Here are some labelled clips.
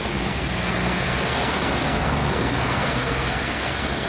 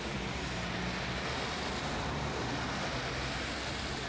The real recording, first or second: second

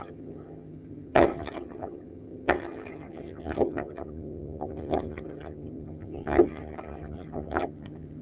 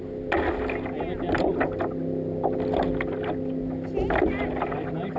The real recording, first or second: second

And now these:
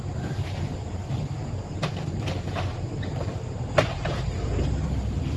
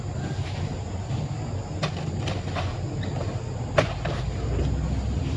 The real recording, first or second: second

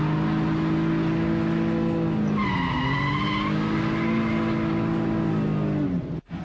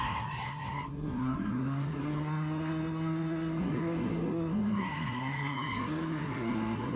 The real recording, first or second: first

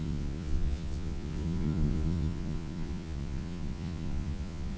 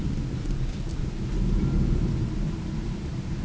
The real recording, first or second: second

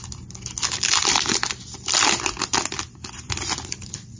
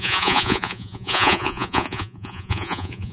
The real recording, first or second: first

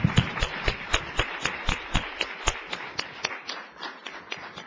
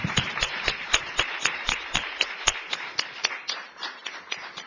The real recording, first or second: first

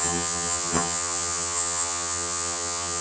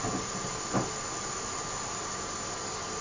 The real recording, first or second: second